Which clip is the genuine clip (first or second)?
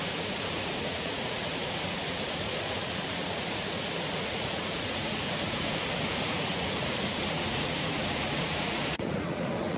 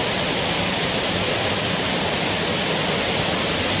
second